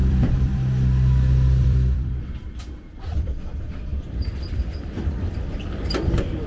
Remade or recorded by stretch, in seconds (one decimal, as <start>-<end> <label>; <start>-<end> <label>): 0.0-3.4 remade; 3.4-3.9 recorded; 3.9-5.8 remade; 5.8-6.5 recorded